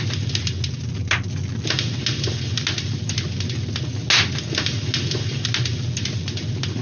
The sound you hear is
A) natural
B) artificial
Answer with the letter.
A